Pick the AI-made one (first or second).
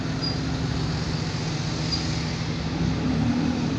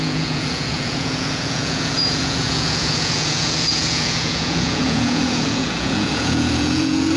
second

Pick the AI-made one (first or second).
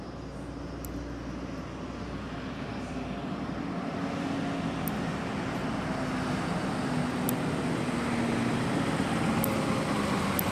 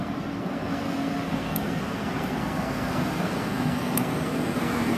second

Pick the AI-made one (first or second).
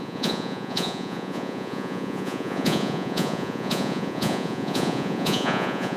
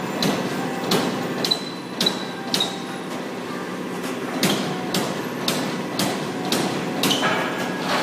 first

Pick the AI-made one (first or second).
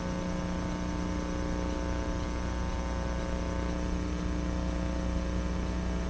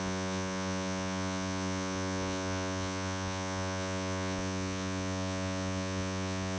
second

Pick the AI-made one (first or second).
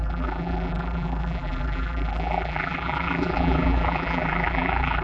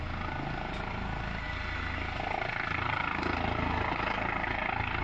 first